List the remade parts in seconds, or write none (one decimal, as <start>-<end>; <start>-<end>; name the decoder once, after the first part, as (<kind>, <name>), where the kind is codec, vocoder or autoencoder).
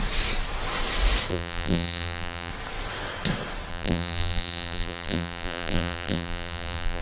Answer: 1.3-2.5 (vocoder, BigVGAN v2); 3.7-7.0